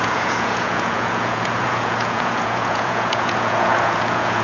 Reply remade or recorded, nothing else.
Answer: remade